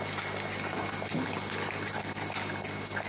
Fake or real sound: real